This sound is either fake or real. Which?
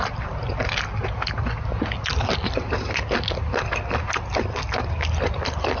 real